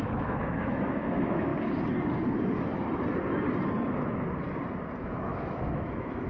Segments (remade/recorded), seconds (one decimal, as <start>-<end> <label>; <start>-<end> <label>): 0.0-1.5 remade; 1.5-5.0 recorded; 5.0-6.3 remade